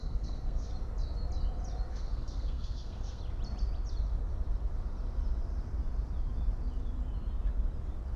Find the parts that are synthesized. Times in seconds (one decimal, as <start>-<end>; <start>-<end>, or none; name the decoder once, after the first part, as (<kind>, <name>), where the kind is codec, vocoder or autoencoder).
0.0-0.7 (codec, SNAC); 1.9-3.2